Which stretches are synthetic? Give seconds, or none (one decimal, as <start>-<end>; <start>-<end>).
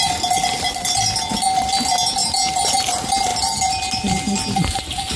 none